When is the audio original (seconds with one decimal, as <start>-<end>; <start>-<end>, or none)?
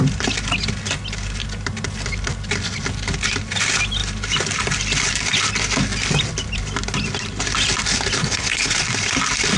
0.0-8.2; 8.8-9.6